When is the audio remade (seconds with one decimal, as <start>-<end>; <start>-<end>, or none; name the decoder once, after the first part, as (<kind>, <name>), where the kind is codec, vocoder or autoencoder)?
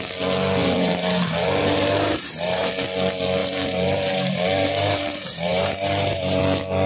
0.6-2.7 (vocoder, BigVGAN v2); 3.4-6.4